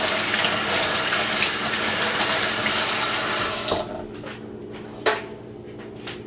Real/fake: real